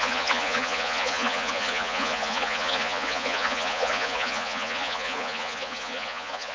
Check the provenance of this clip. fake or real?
fake